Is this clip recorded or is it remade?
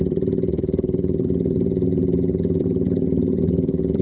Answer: remade